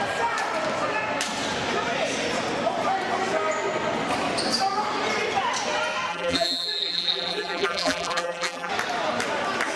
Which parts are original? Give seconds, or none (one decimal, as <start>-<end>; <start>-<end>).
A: 0.0-6.1; 8.7-9.8